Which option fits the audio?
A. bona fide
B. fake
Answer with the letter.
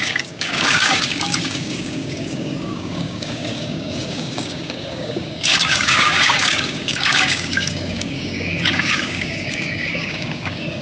B